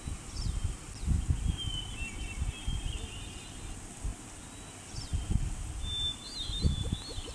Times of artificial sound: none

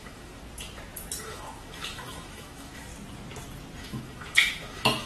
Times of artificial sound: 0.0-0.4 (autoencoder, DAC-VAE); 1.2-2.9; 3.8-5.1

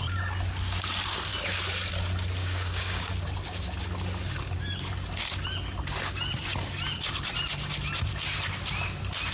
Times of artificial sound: 2.4-3.1 (codec, DAC)

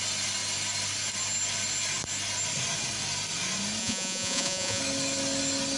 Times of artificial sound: 3.8-4.8 (vocoder, Vocos)